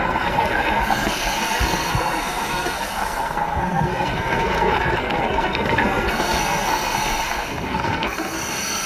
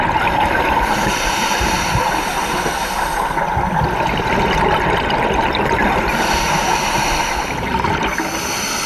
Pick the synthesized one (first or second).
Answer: first